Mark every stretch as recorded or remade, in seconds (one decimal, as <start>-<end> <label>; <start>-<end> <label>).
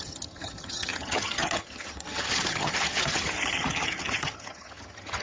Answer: 0.0-5.2 remade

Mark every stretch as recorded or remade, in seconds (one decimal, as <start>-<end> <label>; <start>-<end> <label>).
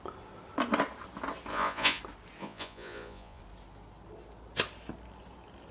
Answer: 0.0-1.5 recorded; 1.5-2.0 remade; 2.0-2.4 recorded; 2.4-3.4 remade; 3.4-5.7 recorded